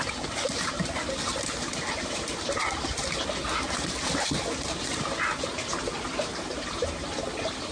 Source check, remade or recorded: recorded